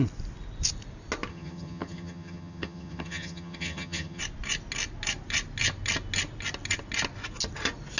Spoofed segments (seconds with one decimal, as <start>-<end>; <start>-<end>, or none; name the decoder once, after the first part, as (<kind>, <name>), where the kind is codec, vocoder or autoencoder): 1.3-4.2 (vocoder, HiFi-GAN)